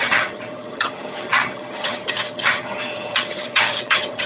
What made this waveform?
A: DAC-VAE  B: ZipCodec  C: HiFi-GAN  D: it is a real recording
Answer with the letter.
C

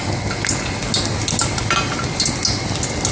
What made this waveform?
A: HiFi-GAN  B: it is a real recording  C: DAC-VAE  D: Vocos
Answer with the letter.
B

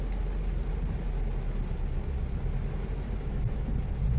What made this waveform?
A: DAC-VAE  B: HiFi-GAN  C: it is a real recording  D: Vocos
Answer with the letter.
C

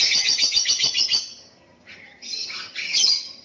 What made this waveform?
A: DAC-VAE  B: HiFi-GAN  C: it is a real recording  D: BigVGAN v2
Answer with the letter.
B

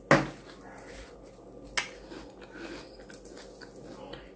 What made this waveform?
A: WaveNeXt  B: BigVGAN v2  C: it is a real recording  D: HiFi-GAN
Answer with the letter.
C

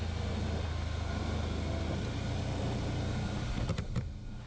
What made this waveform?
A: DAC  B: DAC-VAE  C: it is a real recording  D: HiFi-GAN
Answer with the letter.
C